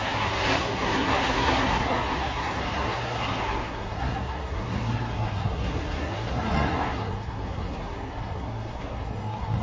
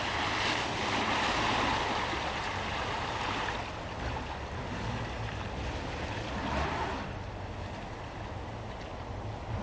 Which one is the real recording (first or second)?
second